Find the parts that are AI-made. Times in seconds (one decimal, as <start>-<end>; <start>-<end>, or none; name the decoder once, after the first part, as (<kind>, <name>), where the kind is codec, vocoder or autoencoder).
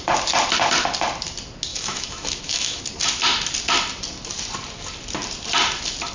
1.7-2.8 (autoencoder, DAC-VAE)